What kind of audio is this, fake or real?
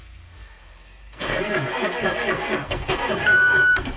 fake